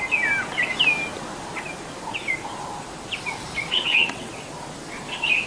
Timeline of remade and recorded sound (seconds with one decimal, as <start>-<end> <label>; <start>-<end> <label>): 0.0-3.7 recorded; 3.7-4.3 remade; 4.3-5.5 recorded